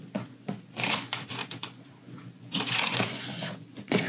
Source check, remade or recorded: remade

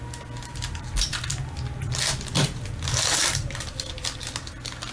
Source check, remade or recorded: recorded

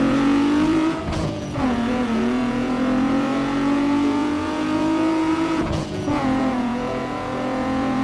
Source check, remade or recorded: remade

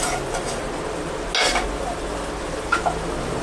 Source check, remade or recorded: recorded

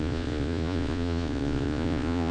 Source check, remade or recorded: remade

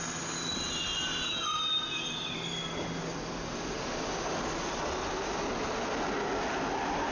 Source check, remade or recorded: recorded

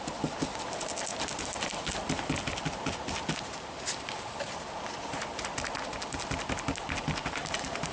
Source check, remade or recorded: recorded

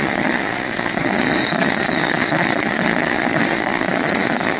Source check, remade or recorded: remade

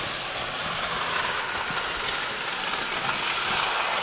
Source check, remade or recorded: recorded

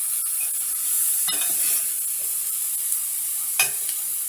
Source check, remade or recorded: recorded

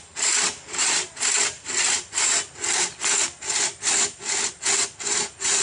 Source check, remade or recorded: recorded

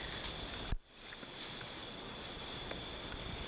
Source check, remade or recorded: recorded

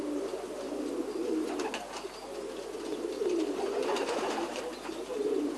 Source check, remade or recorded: recorded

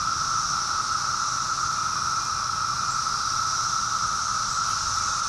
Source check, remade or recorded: recorded